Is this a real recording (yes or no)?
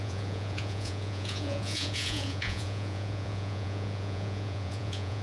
no